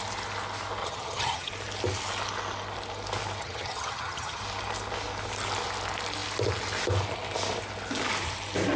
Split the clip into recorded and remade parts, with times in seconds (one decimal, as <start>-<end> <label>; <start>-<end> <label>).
0.0-0.8 recorded; 0.8-1.5 remade; 1.5-3.4 recorded; 3.4-4.4 remade; 4.4-8.8 recorded